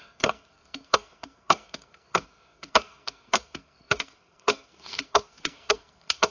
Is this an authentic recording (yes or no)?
no